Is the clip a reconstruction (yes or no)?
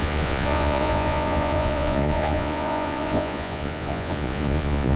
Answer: yes